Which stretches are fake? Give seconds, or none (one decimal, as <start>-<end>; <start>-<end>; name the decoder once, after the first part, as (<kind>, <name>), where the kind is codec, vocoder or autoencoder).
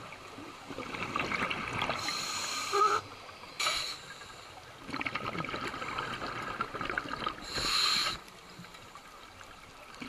none